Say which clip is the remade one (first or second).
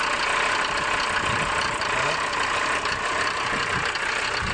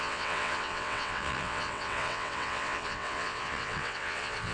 second